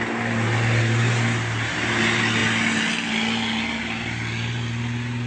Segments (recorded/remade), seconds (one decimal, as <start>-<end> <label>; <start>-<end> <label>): 0.0-5.3 recorded